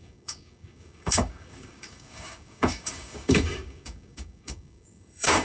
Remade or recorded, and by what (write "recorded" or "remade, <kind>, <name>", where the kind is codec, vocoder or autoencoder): remade, codec, DAC